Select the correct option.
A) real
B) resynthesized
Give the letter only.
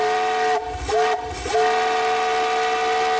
A